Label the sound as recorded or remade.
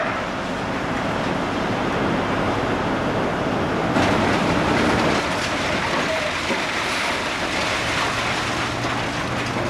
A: recorded